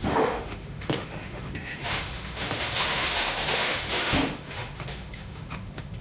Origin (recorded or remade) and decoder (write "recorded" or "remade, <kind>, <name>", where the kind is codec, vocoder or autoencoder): remade, autoencoder, DAC-VAE